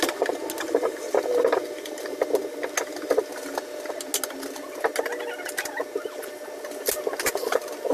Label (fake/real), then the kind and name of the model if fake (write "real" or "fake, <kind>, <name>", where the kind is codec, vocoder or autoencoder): real